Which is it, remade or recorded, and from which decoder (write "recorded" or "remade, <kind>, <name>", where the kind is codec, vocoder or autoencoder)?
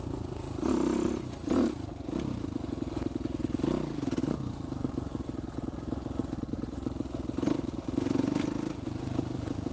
recorded